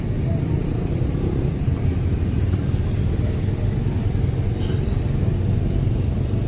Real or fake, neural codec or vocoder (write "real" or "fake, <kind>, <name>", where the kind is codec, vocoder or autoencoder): real